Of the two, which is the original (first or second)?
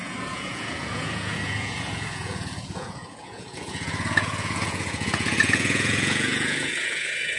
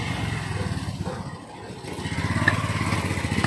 second